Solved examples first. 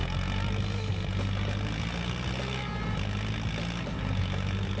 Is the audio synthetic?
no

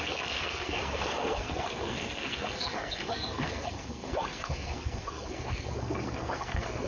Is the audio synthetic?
yes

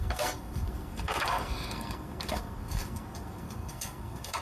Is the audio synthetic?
yes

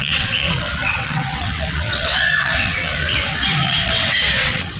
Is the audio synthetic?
yes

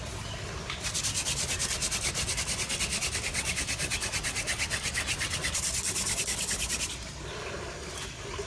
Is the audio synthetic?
no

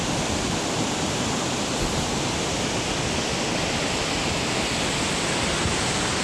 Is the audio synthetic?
no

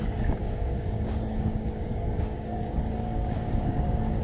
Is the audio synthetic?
yes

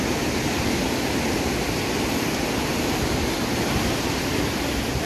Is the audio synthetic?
no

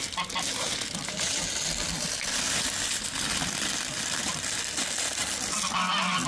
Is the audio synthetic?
no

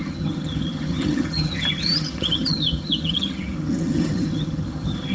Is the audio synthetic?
yes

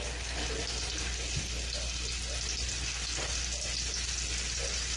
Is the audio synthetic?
no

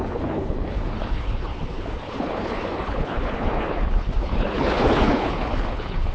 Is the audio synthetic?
yes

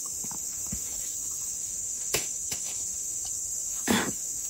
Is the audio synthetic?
yes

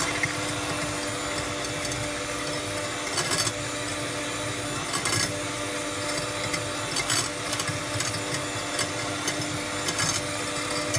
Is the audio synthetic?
no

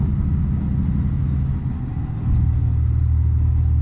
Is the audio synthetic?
no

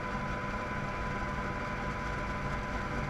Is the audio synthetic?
no